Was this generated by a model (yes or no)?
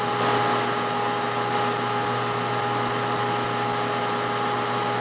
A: no